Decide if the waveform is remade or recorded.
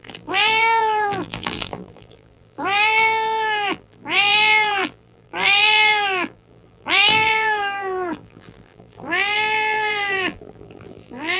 remade